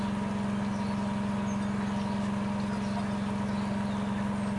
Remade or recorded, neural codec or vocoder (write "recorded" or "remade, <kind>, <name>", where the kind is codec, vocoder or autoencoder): recorded